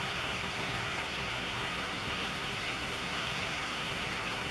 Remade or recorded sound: remade